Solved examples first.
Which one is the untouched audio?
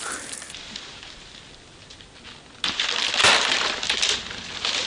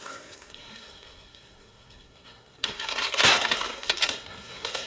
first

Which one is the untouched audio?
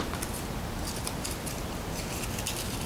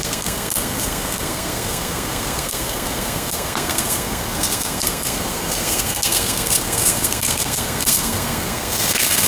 first